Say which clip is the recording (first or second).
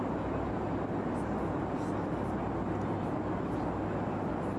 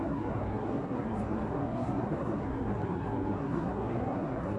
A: first